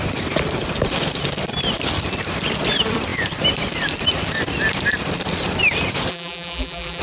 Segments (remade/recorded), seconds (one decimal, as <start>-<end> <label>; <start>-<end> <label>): 0.0-6.1 recorded; 6.1-7.0 remade